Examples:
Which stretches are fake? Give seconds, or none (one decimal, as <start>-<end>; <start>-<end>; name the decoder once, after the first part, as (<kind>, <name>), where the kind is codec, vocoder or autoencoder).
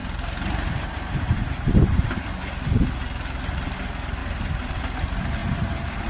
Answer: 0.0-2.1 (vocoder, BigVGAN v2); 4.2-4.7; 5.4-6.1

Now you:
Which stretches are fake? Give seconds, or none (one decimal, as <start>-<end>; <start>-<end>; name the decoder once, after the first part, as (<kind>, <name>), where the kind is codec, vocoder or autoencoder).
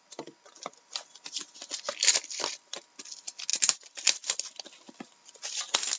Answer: 3.5-5.6 (vocoder, BigVGAN v2)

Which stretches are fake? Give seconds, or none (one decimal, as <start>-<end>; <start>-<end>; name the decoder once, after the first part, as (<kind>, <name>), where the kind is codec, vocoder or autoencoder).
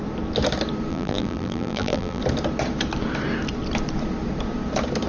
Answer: 0.9-2.2 (vocoder, BigVGAN v2)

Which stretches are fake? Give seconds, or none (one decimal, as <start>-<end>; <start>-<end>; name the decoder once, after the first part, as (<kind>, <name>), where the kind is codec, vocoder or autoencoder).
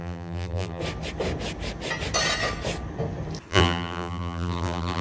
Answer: 0.0-0.8 (vocoder, BigVGAN v2); 3.5-5.0